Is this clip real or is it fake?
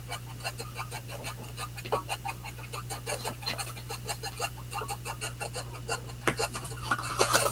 real